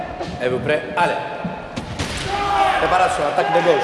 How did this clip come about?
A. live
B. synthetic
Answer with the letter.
A